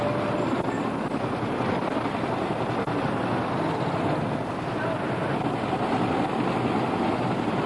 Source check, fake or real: real